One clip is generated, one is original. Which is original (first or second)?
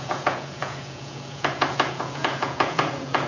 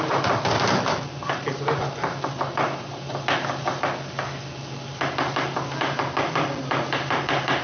second